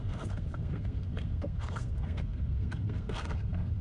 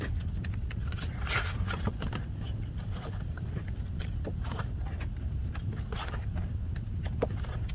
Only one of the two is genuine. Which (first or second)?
second